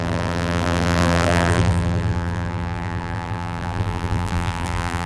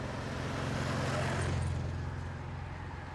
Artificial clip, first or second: first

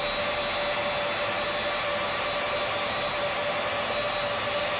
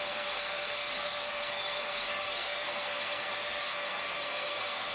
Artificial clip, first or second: second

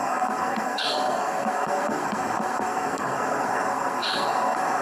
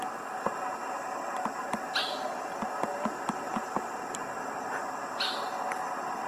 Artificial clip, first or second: first